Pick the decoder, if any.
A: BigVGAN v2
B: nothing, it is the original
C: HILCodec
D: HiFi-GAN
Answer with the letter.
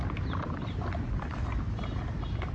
A